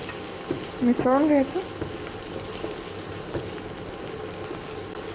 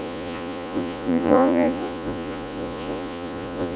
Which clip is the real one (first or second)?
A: first